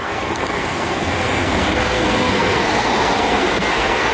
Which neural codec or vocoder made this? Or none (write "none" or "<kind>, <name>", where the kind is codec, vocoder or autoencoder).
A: codec, SNAC